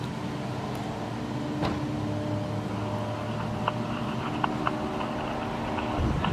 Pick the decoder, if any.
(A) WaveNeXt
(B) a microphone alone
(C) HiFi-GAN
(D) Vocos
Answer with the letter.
B